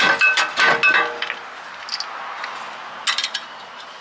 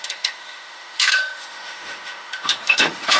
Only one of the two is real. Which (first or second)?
first